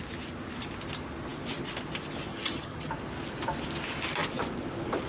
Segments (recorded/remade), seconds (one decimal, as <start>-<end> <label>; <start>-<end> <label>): 0.0-2.3 recorded; 2.3-2.9 remade; 2.9-5.1 recorded